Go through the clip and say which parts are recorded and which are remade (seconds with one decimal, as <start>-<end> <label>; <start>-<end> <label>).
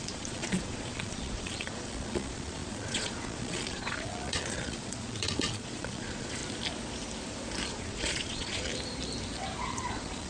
0.0-6.4 remade; 6.4-7.7 recorded; 7.7-8.7 remade; 8.7-9.6 recorded; 9.6-10.3 remade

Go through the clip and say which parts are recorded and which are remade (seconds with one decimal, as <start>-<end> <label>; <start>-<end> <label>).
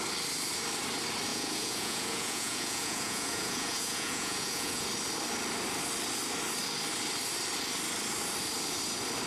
0.0-1.3 recorded; 1.3-4.9 remade; 4.9-9.3 recorded